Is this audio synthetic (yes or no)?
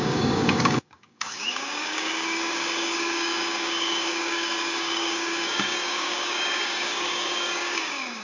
yes